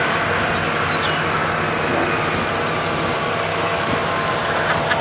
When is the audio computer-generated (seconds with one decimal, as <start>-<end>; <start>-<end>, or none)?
3.5-4.2